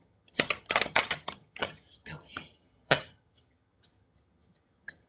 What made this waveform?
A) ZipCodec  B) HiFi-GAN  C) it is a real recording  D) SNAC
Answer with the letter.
B